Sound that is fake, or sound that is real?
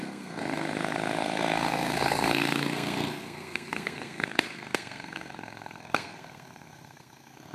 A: fake